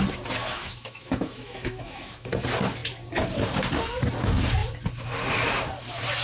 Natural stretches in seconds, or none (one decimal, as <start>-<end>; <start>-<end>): 0.0-0.4; 2.3-6.2